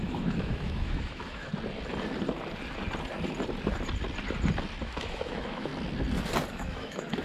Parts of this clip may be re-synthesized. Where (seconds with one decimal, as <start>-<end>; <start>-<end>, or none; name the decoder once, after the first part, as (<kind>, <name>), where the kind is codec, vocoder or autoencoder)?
0.0-1.5 (autoencoder, DAC-VAE); 4.8-5.7; 6.5-7.2